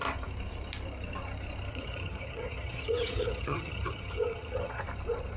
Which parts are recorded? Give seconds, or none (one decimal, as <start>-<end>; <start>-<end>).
0.0-1.7; 4.8-5.4